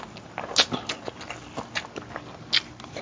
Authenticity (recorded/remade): recorded